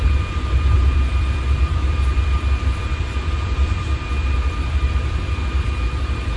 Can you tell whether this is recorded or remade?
remade